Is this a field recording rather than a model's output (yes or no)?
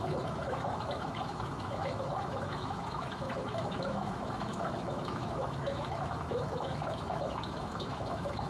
no